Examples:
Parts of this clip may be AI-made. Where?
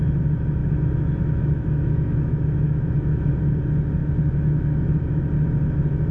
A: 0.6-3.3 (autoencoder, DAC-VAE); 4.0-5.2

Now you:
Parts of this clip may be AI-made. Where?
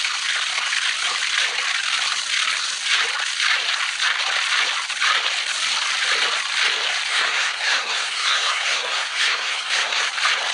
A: 7.1-10.1 (codec, SNAC)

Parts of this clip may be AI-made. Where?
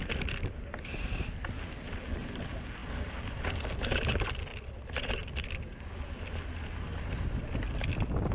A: 4.5-6.3 (vocoder, BigVGAN v2)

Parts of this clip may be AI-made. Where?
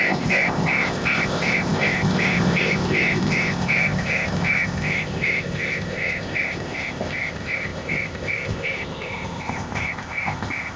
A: 0.0-10.8 (codec, ZipCodec)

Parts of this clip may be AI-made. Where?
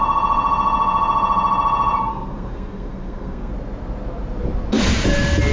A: 2.1-3.5 (codec, SNAC)